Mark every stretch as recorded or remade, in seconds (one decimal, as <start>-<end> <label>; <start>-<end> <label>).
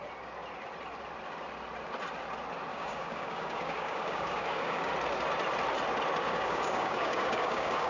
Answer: 0.0-2.7 recorded; 2.7-4.9 remade; 4.9-6.2 recorded; 6.2-7.9 remade